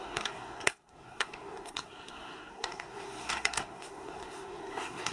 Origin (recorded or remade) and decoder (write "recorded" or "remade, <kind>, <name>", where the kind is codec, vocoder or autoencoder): remade, codec, SNAC